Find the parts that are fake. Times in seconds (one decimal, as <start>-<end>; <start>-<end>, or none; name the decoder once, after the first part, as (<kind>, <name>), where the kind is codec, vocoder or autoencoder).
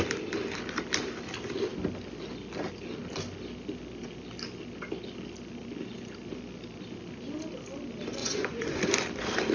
8.2-8.8 (vocoder, Vocos)